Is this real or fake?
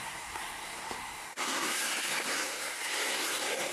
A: fake